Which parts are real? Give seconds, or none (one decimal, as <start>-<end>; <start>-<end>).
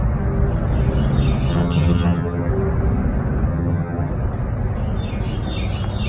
0.0-1.5; 2.5-3.5; 4.1-6.1